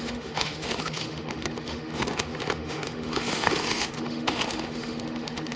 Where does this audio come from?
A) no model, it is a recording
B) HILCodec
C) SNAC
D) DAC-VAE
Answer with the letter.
D